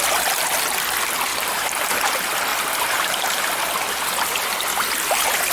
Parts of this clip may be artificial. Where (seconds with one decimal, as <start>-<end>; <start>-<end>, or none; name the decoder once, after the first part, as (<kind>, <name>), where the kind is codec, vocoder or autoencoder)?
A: 1.3-2.1 (vocoder, BigVGAN v2); 2.5-3.5